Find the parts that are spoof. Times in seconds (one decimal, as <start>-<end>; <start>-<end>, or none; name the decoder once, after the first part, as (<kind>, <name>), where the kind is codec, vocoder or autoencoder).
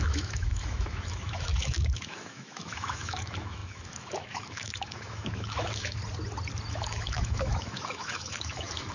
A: 0.0-6.0 (autoencoder, DAC-VAE); 6.7-8.9